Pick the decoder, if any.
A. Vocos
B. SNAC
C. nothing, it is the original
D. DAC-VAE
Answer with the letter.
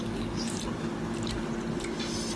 C